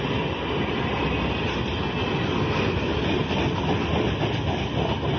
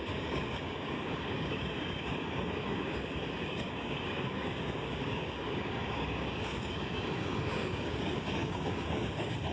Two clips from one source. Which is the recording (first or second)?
first